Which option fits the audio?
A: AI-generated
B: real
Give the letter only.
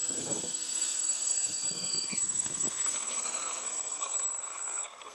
A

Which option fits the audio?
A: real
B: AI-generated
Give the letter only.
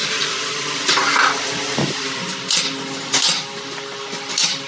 A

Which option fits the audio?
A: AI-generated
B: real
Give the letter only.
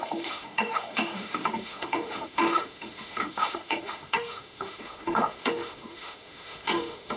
A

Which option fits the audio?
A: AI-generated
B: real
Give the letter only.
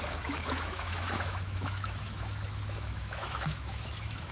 A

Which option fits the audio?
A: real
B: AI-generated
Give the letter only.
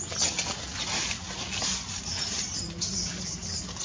A